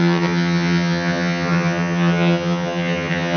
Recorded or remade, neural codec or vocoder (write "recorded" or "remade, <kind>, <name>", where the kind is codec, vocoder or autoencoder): remade, vocoder, HiFi-GAN